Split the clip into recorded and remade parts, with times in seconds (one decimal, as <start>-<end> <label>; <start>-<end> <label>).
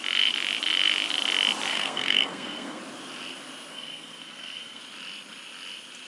0.0-1.7 recorded; 1.7-2.8 remade; 2.8-3.7 recorded; 3.7-4.8 remade; 4.8-6.1 recorded